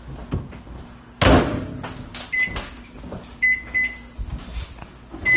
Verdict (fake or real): real